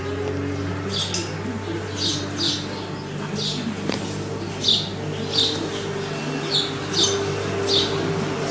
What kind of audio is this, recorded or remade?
recorded